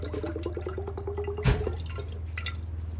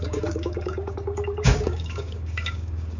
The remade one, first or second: second